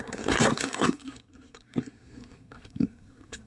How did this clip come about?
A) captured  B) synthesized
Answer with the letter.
B